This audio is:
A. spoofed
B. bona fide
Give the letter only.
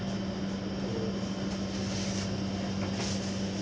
B